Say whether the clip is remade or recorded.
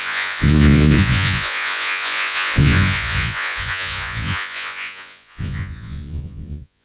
remade